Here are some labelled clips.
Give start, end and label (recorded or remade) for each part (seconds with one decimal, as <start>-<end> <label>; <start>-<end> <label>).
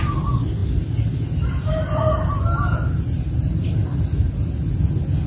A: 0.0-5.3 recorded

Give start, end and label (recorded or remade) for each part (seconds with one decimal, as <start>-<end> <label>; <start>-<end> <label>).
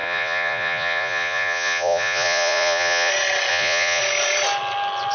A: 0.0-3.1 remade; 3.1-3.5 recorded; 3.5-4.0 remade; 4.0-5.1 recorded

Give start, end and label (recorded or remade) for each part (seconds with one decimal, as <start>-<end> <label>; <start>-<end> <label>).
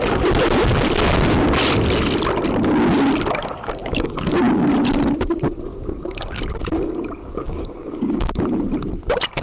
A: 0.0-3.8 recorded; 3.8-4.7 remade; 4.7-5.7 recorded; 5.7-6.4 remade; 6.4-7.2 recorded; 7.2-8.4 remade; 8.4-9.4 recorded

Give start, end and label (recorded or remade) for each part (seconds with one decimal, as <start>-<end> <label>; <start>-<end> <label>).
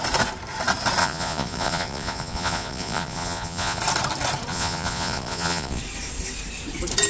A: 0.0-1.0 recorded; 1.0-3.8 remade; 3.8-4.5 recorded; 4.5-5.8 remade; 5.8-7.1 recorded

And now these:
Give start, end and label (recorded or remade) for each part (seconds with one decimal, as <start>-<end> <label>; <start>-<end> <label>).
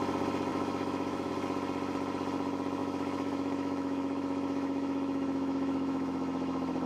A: 0.0-0.5 recorded; 0.5-1.3 remade; 1.3-2.8 recorded; 2.8-6.9 remade